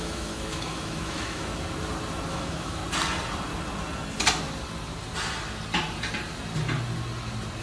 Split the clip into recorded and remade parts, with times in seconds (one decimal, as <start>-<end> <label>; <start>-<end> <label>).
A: 0.0-1.5 remade; 1.5-2.3 recorded; 2.3-2.8 remade; 2.8-7.6 recorded